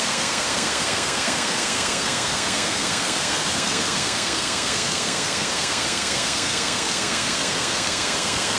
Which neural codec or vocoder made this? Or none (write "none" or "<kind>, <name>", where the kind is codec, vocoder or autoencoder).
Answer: codec, SNAC